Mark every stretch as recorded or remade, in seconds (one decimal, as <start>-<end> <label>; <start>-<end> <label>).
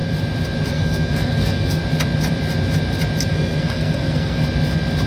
0.0-0.7 recorded; 0.7-1.8 remade; 1.8-3.3 recorded; 3.3-4.4 remade; 4.4-5.1 recorded